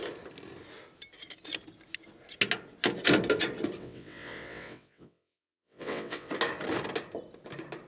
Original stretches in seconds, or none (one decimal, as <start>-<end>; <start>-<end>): 0.0-3.8; 6.3-7.9